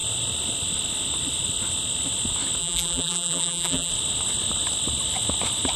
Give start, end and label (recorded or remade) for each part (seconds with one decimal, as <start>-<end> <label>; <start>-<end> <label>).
0.0-2.6 recorded; 2.6-3.9 remade; 3.9-5.8 recorded